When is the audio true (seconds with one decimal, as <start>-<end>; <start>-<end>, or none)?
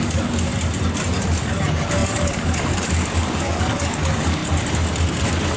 0.5-1.2; 4.4-5.6